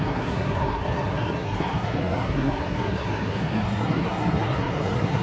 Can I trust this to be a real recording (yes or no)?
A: no